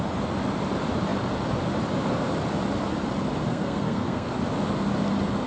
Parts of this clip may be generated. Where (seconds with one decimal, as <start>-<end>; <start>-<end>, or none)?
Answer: 3.5-4.3

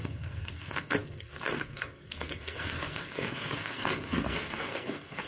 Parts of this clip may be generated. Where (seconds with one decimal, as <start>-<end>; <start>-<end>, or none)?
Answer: 0.0-5.3

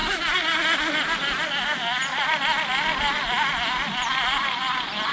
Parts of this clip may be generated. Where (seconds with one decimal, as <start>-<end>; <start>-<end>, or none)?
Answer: none

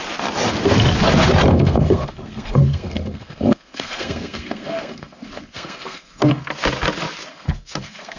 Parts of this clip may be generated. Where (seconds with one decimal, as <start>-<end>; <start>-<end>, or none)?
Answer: 1.5-6.4; 7.3-8.2